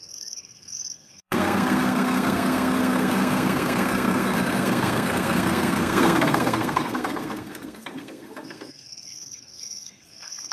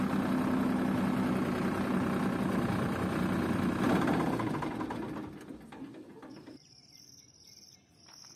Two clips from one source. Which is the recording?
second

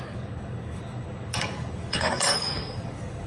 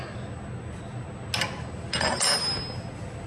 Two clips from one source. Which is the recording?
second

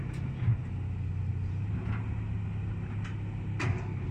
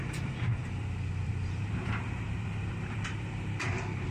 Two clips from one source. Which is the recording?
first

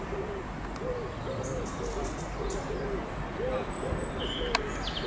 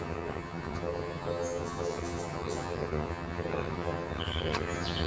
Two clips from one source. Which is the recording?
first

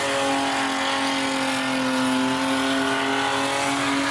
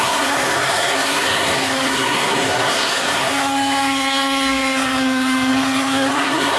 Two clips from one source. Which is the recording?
first